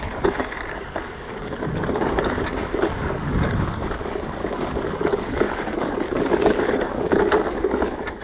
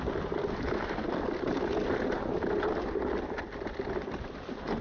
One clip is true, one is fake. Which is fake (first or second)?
first